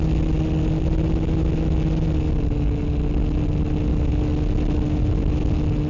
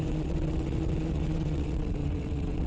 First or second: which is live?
first